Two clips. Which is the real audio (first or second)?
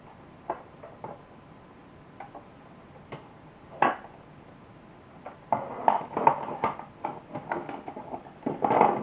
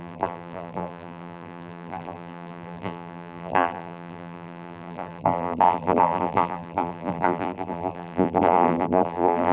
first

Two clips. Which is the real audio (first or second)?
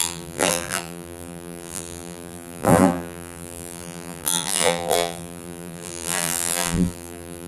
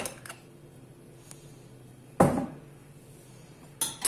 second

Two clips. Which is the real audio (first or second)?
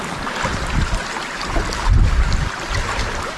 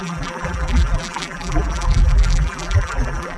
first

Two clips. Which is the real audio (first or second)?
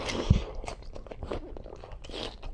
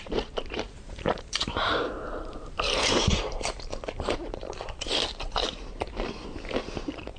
first